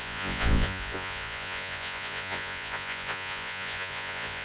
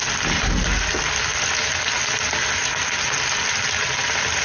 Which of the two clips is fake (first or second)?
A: first